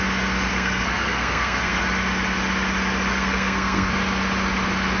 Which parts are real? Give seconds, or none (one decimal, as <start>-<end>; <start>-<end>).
0.0-0.5; 1.8-3.1; 3.9-5.0